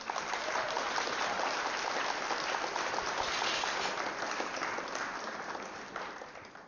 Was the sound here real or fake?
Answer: real